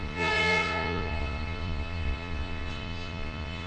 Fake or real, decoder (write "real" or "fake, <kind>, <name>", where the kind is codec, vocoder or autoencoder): fake, vocoder, Vocos